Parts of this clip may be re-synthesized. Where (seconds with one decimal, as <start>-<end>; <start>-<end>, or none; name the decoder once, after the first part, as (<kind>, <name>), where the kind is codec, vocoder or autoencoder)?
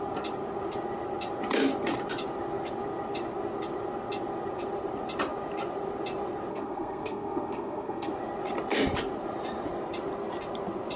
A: 6.5-8.1 (codec, SNAC)